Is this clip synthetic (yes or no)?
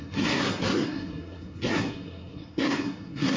yes